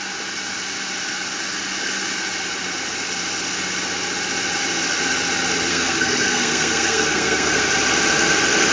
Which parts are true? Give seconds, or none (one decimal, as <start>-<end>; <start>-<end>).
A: 0.0-5.7; 7.6-8.7